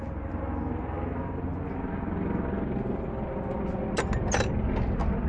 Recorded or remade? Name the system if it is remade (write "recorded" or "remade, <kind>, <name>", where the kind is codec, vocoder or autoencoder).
recorded